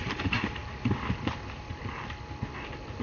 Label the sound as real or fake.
real